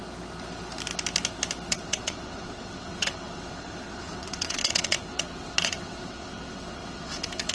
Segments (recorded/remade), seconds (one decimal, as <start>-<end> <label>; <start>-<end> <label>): 0.0-1.7 recorded; 1.7-7.5 remade